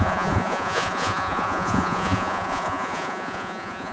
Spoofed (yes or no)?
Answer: yes